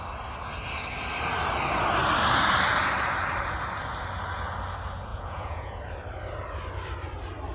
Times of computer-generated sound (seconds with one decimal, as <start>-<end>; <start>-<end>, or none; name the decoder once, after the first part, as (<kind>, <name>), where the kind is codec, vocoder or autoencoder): 5.1-5.8 (vocoder, Vocos)

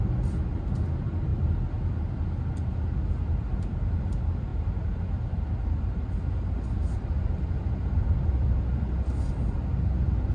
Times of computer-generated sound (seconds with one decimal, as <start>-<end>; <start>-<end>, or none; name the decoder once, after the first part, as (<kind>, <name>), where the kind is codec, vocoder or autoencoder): none

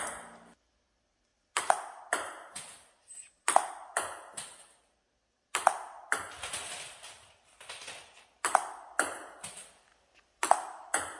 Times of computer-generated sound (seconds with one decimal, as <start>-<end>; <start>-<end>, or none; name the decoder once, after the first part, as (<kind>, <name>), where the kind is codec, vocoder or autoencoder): none

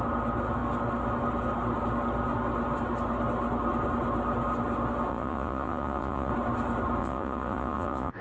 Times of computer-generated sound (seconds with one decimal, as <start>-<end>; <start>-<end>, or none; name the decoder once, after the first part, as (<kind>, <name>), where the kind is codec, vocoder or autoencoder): 5.1-6.3 (vocoder, Vocos); 7.0-8.2

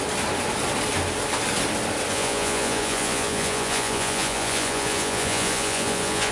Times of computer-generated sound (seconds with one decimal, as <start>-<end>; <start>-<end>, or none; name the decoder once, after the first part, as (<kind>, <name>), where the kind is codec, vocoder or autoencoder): 2.1-6.3 (vocoder, Vocos)

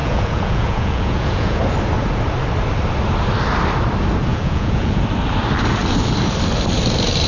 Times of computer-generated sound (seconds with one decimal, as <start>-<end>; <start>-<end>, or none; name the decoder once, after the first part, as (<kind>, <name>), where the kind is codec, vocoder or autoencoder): 0.0-1.6 (vocoder, Vocos); 4.3-5.0

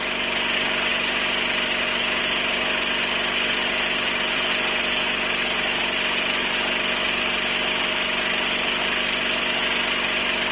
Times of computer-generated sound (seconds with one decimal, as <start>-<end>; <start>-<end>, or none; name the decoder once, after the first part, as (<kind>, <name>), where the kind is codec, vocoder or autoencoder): none

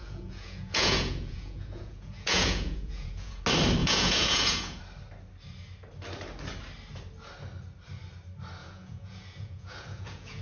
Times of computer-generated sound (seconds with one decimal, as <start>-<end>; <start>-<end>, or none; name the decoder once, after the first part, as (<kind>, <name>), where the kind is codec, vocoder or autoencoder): 0.0-3.4 (vocoder, Vocos); 3.8-4.8; 8.6-10.4